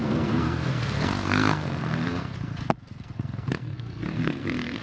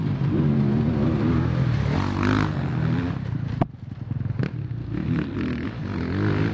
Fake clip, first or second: first